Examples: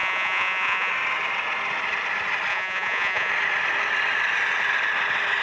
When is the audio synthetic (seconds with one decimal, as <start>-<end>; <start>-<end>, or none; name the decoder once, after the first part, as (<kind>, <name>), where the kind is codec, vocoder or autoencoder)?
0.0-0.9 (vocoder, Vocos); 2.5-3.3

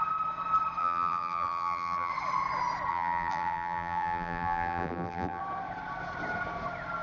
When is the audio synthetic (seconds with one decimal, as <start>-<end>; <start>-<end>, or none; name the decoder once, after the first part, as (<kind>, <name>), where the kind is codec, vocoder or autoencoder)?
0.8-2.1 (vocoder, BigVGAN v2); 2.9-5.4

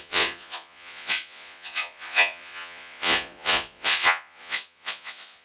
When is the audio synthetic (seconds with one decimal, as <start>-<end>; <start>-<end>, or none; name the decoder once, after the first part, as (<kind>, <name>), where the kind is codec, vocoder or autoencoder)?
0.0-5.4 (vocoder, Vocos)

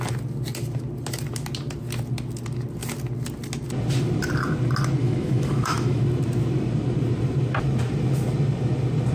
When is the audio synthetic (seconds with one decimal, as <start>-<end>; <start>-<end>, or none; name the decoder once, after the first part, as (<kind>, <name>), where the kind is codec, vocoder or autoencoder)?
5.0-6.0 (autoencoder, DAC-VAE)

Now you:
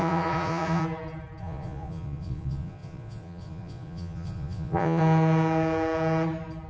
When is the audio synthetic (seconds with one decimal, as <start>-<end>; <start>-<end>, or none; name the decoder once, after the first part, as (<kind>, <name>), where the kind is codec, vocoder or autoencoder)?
0.0-0.8 (vocoder, Vocos); 1.4-5.0

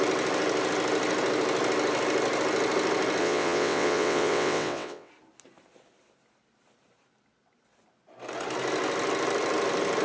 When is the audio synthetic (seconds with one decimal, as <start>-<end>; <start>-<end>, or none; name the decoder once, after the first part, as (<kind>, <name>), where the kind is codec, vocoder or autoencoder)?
3.2-5.1 (vocoder, WaveNeXt)

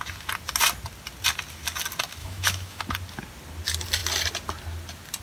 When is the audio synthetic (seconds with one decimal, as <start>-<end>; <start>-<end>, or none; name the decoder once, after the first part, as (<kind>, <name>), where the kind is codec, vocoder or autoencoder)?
2.2-2.8 (autoencoder, DAC-VAE)

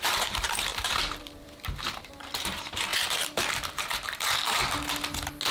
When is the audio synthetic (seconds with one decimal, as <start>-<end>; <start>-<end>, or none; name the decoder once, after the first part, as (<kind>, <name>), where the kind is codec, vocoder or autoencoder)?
0.0-4.6 (vocoder, BigVGAN v2)